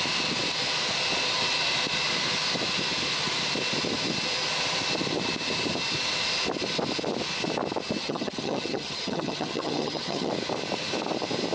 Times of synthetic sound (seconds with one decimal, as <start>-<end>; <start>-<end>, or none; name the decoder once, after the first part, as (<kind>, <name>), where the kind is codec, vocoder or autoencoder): 8.0-10.3 (vocoder, HiFi-GAN)